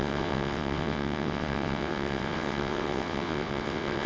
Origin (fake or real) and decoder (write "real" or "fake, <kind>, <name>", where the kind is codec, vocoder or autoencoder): fake, vocoder, WaveNeXt